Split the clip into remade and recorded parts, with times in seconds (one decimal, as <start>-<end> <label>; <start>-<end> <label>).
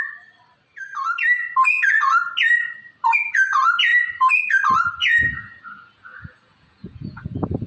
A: 0.0-5.0 recorded; 5.0-7.7 remade